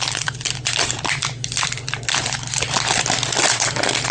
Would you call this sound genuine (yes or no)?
no